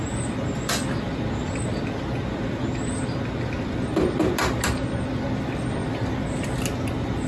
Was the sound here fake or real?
real